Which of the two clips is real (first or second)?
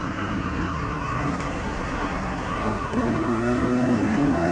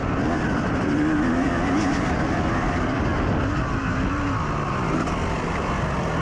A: second